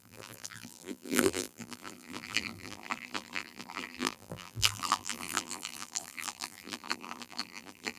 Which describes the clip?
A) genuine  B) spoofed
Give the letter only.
B